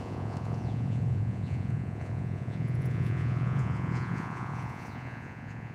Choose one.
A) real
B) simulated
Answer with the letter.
B